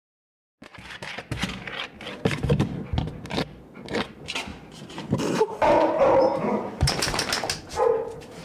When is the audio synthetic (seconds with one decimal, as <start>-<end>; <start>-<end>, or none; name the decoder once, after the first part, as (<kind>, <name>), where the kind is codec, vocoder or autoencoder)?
4.5-7.2 (vocoder, BigVGAN v2)